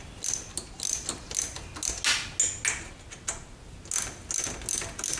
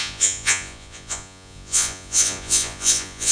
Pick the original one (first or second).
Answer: first